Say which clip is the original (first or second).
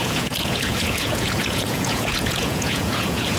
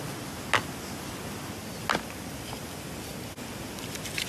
second